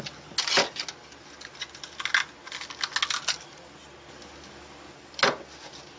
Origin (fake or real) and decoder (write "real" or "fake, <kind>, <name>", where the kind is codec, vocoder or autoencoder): real